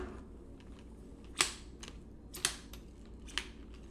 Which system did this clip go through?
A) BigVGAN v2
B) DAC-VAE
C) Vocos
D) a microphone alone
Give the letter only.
D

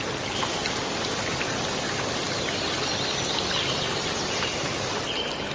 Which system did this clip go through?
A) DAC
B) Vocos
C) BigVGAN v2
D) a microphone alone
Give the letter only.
D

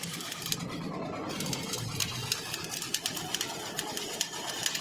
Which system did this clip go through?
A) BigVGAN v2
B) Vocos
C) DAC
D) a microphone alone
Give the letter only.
A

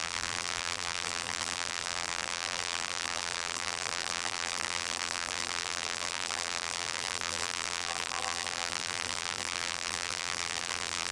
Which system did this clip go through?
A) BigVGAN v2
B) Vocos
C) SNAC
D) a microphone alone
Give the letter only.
A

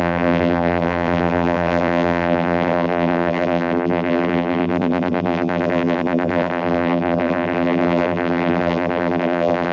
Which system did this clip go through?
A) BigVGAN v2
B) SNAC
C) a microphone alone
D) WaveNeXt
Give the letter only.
A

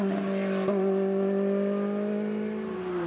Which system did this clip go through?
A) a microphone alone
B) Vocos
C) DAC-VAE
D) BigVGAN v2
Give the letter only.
A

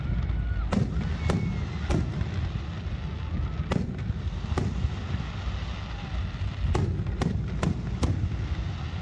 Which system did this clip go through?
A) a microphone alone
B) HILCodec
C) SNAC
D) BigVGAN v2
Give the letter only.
A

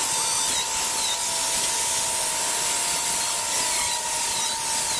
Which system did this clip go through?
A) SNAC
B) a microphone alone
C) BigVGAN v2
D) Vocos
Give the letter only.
B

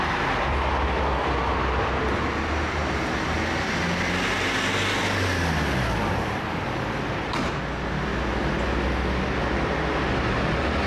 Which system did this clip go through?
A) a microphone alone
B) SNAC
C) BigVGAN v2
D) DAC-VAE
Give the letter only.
A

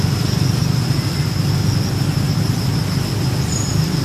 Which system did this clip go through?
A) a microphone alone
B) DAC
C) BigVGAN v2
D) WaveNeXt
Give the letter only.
A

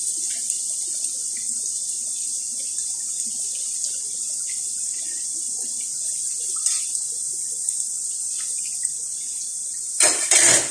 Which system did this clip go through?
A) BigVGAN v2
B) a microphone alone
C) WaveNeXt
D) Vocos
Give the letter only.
A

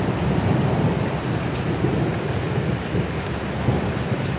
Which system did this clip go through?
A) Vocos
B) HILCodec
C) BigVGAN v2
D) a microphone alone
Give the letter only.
D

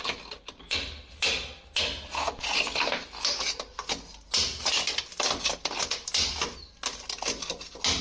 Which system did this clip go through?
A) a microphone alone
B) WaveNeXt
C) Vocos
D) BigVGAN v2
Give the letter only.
A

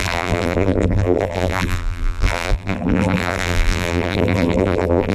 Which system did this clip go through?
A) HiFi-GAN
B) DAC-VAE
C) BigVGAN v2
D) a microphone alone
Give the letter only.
C